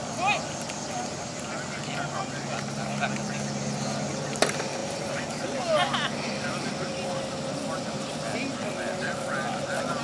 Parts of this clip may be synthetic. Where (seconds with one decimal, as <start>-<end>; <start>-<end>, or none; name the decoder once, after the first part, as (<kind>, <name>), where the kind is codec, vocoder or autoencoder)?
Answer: none